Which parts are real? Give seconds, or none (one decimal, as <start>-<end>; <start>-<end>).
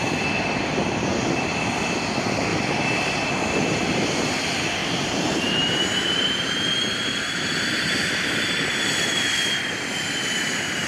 0.0-2.5; 3.1-4.8; 9.6-10.9